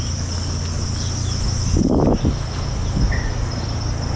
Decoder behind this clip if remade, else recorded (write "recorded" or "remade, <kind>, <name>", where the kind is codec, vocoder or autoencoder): recorded